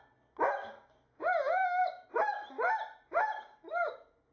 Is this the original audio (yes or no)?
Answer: yes